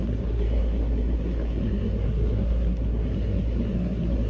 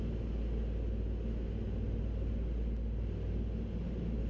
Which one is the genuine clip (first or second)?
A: second